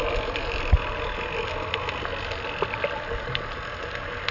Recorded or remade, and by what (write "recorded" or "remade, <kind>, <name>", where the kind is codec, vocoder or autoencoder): recorded